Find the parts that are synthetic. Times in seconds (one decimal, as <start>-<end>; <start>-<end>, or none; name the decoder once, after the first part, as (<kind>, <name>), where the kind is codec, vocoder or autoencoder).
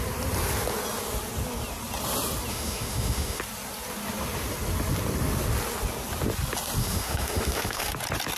2.5-3.4 (autoencoder, DAC-VAE); 6.8-7.9